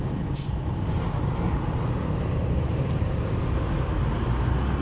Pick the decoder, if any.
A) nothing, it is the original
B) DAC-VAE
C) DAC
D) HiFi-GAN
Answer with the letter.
A